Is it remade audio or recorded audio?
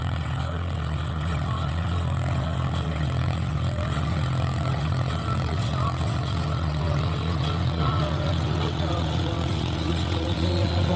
remade